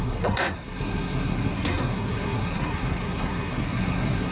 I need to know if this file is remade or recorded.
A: remade